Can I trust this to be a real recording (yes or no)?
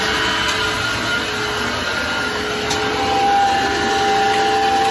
yes